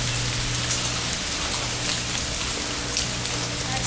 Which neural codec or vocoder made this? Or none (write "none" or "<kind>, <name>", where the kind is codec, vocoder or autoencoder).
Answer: none